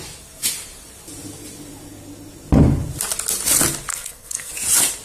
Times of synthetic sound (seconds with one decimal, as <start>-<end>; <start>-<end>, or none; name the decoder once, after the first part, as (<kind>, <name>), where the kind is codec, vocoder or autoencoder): 3.9-4.5 (codec, SNAC)